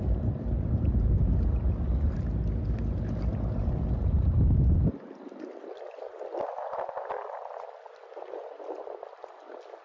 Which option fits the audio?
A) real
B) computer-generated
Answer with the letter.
A